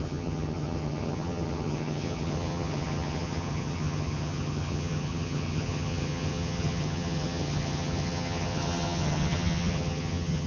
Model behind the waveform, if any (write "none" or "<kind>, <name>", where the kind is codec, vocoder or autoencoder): vocoder, HiFi-GAN